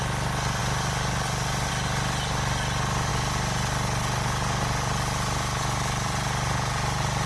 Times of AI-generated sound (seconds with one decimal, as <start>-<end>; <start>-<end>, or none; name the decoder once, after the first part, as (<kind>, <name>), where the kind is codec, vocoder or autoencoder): none